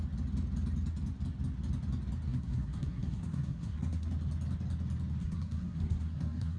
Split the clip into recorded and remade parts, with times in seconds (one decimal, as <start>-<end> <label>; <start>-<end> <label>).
0.0-2.3 recorded; 2.3-4.1 remade; 4.1-5.2 recorded; 5.2-6.6 remade